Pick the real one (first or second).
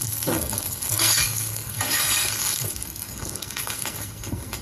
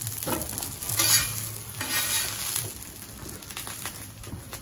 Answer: second